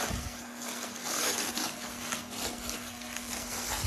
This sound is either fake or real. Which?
fake